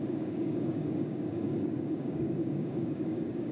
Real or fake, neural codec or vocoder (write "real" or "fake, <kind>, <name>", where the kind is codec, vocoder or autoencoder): fake, codec, DAC